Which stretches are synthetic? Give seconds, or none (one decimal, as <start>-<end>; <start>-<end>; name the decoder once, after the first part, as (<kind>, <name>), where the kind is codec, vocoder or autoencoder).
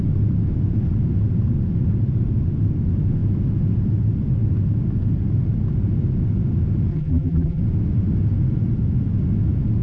6.9-7.6 (vocoder, BigVGAN v2)